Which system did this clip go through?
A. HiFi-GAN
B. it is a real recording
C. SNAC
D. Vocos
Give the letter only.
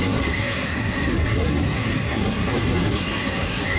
C